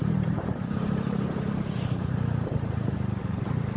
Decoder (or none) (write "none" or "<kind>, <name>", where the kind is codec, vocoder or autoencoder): vocoder, BigVGAN v2